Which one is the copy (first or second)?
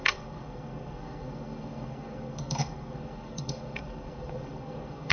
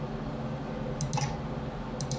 first